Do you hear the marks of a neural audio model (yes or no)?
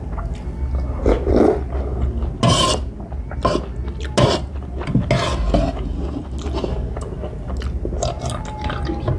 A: no